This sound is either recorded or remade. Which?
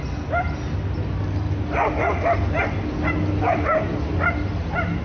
recorded